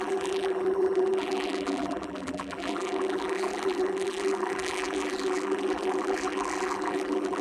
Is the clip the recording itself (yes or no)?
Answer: no